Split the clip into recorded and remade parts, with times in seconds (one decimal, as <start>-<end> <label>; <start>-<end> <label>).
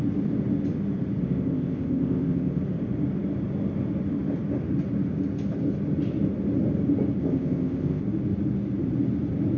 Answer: 0.0-1.2 recorded; 1.2-2.6 remade; 2.6-7.2 recorded; 7.2-8.0 remade; 8.0-9.6 recorded